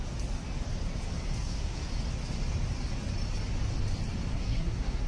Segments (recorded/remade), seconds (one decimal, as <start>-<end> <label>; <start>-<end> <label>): 0.0-1.4 recorded; 1.4-1.9 remade; 1.9-4.3 recorded; 4.3-5.1 remade